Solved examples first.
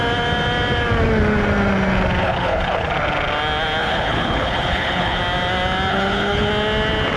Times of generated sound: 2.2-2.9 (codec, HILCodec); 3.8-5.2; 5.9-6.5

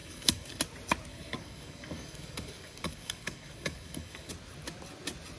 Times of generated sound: 0.0-0.6 (codec, DAC); 1.1-4.3